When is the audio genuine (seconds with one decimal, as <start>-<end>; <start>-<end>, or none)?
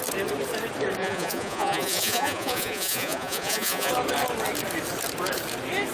0.0-1.0; 3.9-5.9